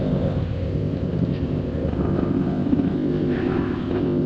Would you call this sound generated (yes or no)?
yes